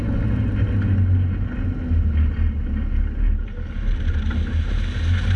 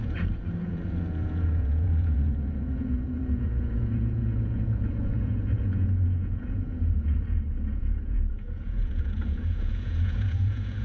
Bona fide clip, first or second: first